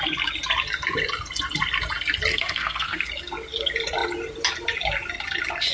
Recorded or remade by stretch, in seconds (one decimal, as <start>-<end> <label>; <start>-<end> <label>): 0.0-2.3 recorded; 2.3-3.1 remade; 3.1-5.7 recorded